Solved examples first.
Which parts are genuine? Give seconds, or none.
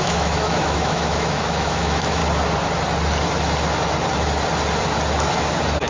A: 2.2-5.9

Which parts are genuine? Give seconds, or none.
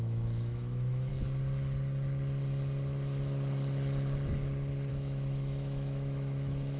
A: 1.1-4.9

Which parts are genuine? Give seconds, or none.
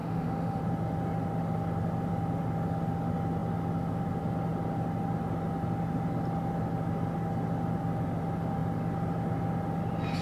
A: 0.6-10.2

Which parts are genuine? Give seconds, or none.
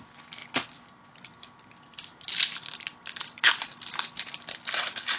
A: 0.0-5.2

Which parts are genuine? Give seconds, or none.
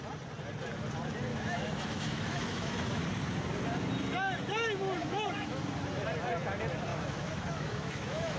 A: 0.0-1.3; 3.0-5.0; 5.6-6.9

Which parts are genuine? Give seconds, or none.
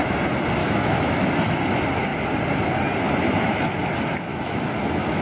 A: 0.0-0.6; 1.3-4.3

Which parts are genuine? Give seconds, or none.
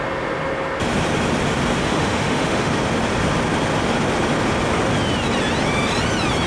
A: 0.0-1.8; 2.7-6.5